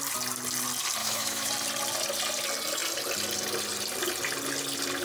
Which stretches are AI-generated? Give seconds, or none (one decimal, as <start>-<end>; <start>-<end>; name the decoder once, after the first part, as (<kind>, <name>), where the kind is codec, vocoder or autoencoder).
1.0-1.5 (autoencoder, DAC-VAE)